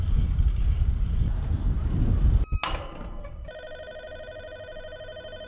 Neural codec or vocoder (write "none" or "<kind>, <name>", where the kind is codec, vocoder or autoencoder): none